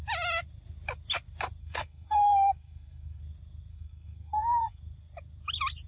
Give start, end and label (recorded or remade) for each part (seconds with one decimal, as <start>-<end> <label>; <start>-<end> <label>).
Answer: 0.0-1.6 recorded; 1.6-3.2 remade; 3.2-3.7 recorded; 3.7-4.8 remade; 4.8-5.9 recorded